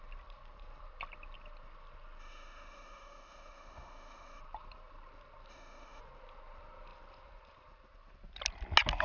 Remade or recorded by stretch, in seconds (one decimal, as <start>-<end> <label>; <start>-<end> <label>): 0.0-2.2 recorded; 2.2-4.4 remade; 4.4-5.5 recorded; 5.5-6.0 remade; 6.0-9.0 recorded